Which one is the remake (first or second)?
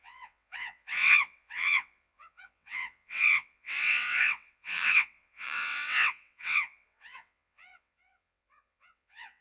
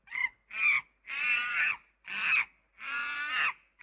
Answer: first